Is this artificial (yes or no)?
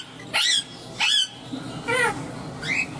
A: no